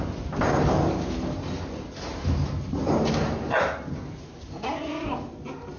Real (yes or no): yes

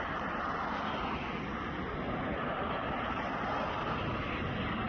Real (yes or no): yes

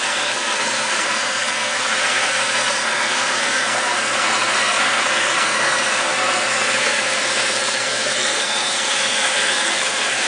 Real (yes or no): no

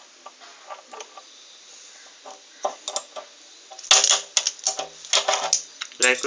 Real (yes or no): yes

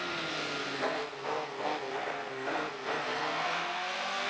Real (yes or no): no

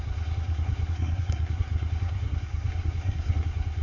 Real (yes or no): no